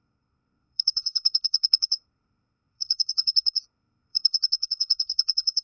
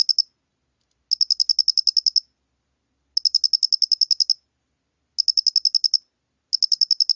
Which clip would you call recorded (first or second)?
second